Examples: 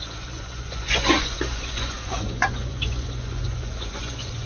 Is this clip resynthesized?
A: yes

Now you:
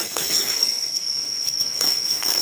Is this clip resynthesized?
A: yes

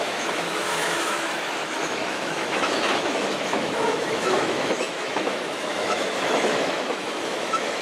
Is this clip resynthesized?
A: yes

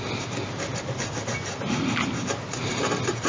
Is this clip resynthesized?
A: no